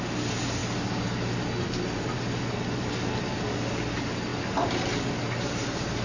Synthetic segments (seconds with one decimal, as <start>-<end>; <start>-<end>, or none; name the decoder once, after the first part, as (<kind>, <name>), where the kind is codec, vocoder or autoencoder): none